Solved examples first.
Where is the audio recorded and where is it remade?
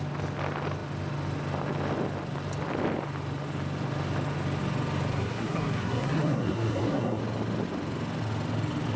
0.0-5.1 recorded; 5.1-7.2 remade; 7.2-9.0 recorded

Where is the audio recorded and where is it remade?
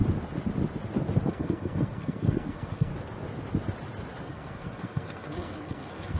0.0-1.3 recorded; 1.3-2.9 remade; 2.9-4.2 recorded; 4.2-6.2 remade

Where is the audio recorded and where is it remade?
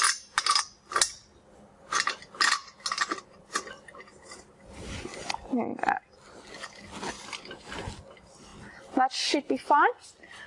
0.0-10.5 recorded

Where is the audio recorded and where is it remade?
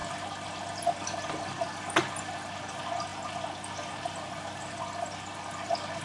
0.0-6.0 recorded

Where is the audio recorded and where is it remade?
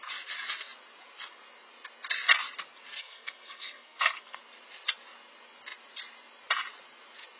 0.0-3.0 recorded; 3.0-4.4 remade; 4.4-7.4 recorded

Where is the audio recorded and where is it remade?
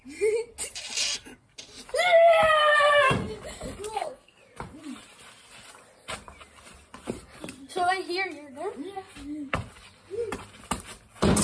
0.0-3.9 recorded; 3.9-4.4 remade; 4.4-11.4 recorded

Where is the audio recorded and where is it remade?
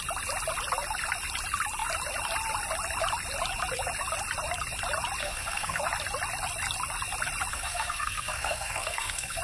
0.0-5.2 recorded; 5.2-5.8 remade; 5.8-7.5 recorded; 7.5-9.4 remade